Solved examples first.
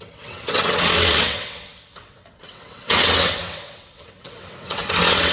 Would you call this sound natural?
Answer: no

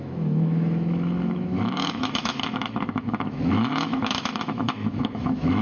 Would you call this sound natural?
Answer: no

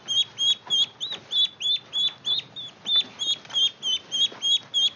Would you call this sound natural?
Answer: yes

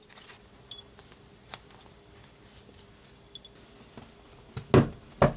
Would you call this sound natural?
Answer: yes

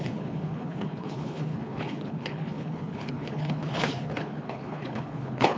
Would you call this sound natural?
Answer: no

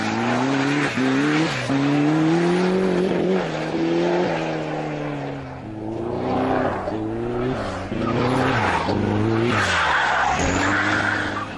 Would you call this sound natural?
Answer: yes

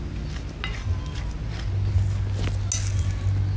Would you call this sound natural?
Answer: yes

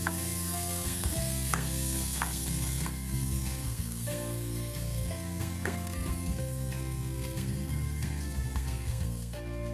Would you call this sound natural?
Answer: no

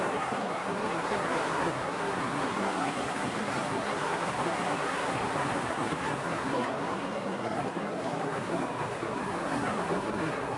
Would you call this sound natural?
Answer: no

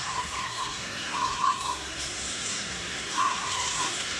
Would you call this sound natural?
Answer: no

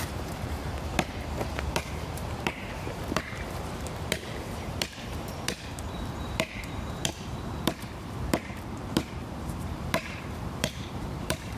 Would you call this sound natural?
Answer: no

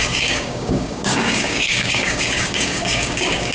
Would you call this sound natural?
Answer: no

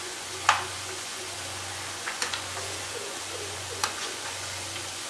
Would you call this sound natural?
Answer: no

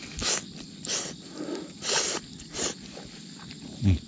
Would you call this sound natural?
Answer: yes